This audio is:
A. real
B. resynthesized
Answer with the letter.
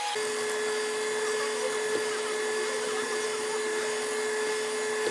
A